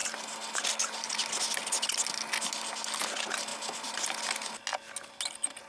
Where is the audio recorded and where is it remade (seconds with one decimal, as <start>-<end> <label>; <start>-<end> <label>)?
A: 0.0-5.7 recorded